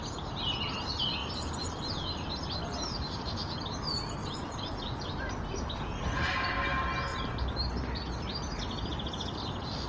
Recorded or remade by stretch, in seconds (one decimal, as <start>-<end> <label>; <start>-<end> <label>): 0.0-1.2 recorded; 1.2-3.6 remade; 3.6-4.2 recorded; 4.2-6.3 remade; 6.3-7.1 recorded; 7.1-7.7 remade; 7.7-9.9 recorded